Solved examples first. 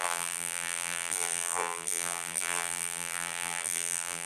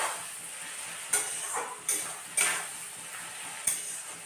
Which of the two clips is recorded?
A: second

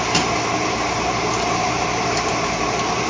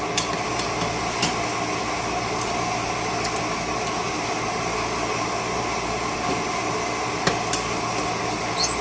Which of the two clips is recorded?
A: second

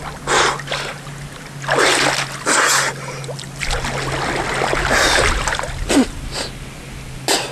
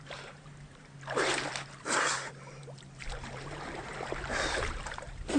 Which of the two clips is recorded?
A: first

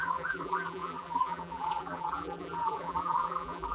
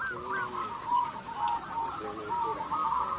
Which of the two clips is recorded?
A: second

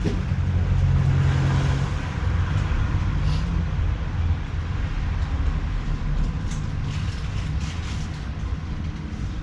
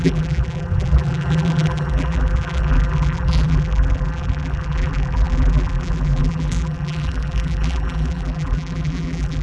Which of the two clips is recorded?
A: first